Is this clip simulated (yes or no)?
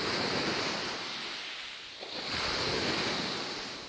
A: no